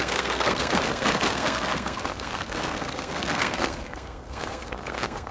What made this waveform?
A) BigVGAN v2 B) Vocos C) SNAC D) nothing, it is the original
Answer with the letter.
C